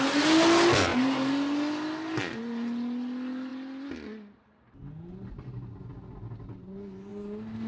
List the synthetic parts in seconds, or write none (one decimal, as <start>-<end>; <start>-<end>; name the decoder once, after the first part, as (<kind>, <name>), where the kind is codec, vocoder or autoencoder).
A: none